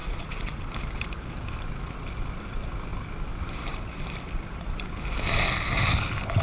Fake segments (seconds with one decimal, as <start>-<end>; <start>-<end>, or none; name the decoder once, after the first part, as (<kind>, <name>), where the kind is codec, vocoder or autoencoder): 0.0-0.7 (vocoder, Vocos)